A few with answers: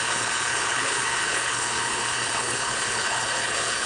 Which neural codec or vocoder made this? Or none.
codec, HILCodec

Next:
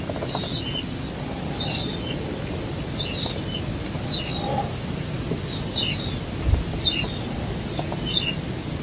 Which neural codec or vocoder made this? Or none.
none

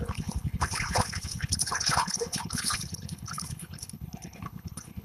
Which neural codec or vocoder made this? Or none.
codec, HILCodec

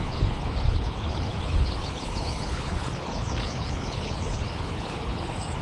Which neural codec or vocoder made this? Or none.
codec, HILCodec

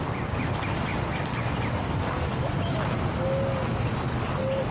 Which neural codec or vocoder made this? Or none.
none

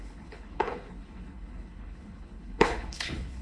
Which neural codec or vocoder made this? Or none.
codec, HILCodec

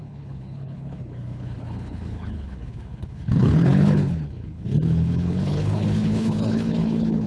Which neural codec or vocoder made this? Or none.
codec, HILCodec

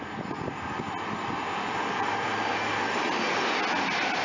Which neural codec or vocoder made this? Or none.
none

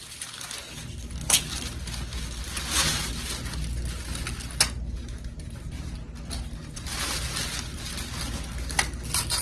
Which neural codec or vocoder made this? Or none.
none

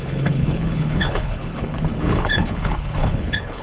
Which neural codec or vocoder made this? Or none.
codec, HILCodec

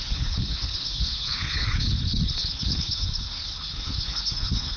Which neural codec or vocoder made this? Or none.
codec, HILCodec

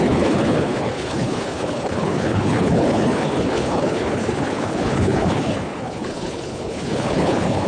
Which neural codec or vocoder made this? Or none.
codec, HILCodec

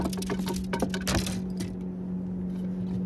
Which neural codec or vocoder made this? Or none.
none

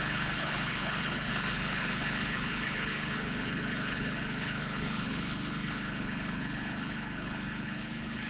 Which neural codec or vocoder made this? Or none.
codec, HILCodec